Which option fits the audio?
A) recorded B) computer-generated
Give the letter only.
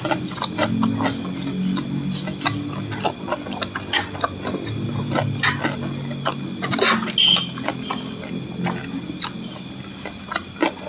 A